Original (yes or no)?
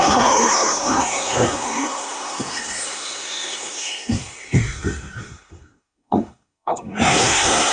no